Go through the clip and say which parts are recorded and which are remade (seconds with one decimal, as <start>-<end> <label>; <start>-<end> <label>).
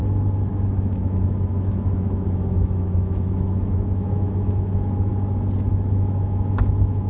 0.0-0.5 recorded; 0.5-5.1 remade; 5.1-5.7 recorded; 5.7-7.1 remade